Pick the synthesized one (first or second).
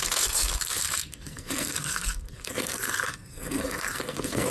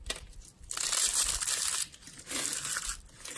first